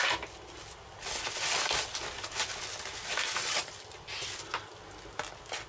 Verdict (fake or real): real